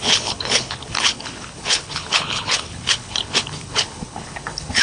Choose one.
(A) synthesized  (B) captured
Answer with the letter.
A